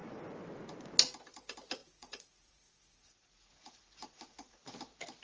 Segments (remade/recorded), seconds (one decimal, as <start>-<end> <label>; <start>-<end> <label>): 0.0-1.8 recorded; 1.8-4.7 remade; 4.7-5.2 recorded